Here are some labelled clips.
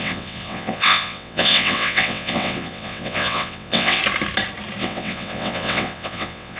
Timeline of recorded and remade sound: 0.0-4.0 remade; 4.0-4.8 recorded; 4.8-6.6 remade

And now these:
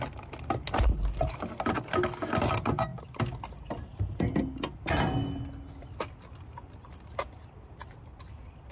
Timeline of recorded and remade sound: 0.0-8.7 recorded

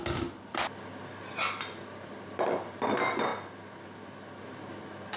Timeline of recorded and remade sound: 0.0-5.2 recorded

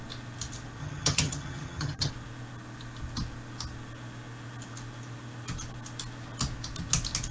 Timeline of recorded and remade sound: 0.0-0.8 recorded; 0.8-2.1 remade; 2.1-7.3 recorded

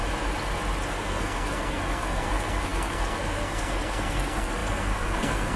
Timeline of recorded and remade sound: 0.0-0.9 recorded; 0.9-5.6 remade

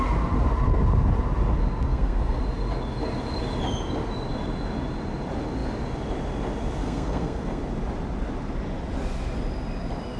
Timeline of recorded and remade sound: 0.0-1.9 recorded; 1.9-2.4 remade; 2.4-6.8 recorded; 6.8-7.6 remade; 7.6-10.2 recorded

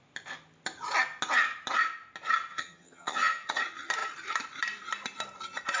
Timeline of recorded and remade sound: 0.0-2.5 recorded; 2.5-3.6 remade; 3.6-5.8 recorded

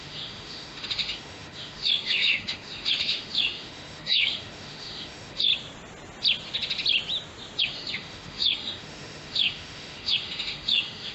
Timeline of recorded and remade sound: 0.0-5.5 remade; 5.5-7.6 recorded; 7.6-11.1 remade